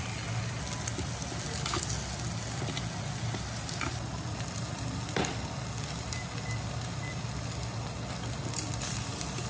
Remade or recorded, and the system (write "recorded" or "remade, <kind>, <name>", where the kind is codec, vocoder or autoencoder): recorded